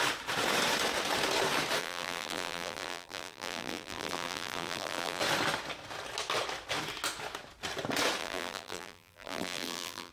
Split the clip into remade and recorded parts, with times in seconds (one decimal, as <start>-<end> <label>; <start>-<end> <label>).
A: 0.0-1.8 recorded; 1.8-5.2 remade; 5.2-8.2 recorded; 8.2-10.1 remade